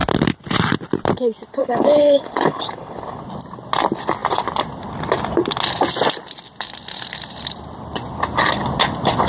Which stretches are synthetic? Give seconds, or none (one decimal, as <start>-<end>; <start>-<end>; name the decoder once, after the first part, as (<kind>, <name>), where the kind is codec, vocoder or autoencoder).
1.6-3.2 (codec, HILCodec)